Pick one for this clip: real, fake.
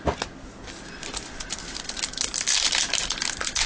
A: real